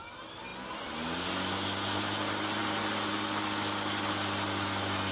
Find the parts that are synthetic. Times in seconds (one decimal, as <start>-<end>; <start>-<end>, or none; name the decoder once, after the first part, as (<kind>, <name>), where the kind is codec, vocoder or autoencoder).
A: none

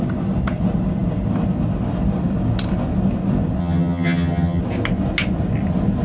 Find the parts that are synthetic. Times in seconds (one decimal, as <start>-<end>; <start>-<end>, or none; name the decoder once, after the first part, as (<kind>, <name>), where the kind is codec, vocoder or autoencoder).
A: 3.6-4.6 (vocoder, HiFi-GAN)

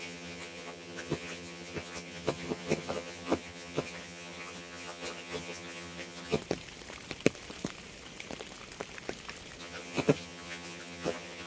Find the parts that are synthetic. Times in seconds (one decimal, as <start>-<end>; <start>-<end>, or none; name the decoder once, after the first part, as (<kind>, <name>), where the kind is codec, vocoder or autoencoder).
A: 0.0-6.4 (vocoder, HiFi-GAN); 9.6-11.5